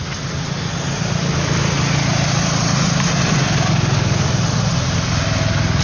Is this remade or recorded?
recorded